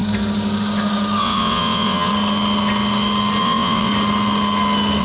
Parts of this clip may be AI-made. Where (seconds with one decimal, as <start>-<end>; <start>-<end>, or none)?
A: 1.2-2.1; 3.4-3.9